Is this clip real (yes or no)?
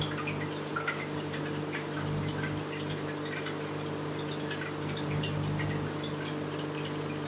yes